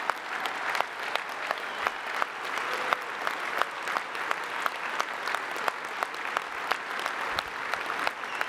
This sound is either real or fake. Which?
real